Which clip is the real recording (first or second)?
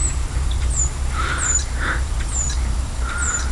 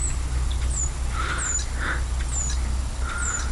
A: second